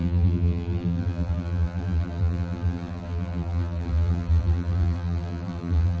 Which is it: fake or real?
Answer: fake